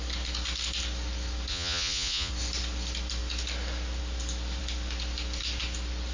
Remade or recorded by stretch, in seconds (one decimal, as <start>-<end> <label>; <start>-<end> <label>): 0.0-1.5 recorded; 1.5-2.3 remade; 2.3-6.1 recorded